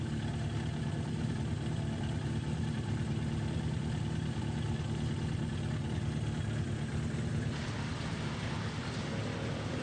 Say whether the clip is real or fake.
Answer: real